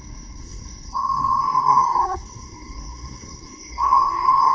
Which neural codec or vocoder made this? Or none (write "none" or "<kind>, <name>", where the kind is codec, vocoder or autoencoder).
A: codec, SNAC